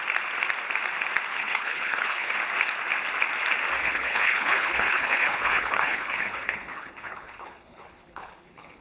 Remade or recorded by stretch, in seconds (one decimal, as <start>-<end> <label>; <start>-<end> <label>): 0.0-1.3 recorded; 1.3-2.3 remade; 2.3-3.8 recorded; 3.8-8.8 remade